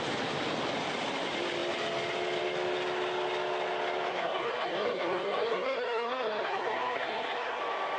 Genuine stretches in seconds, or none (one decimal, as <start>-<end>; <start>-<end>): 0.0-4.1; 7.6-8.0